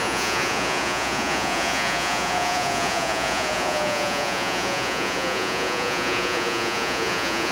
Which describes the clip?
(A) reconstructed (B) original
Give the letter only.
A